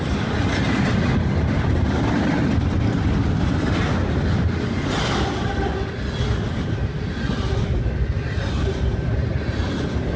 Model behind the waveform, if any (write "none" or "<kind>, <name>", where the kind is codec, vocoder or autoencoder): none